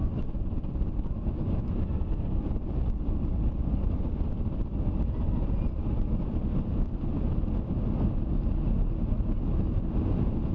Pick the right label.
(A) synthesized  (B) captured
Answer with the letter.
B